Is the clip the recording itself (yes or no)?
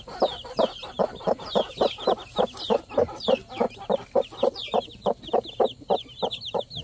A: yes